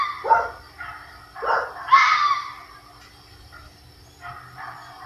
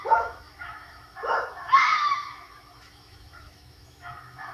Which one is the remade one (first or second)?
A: second